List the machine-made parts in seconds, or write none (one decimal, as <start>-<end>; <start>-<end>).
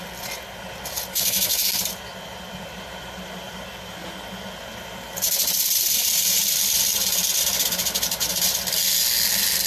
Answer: 1.1-1.8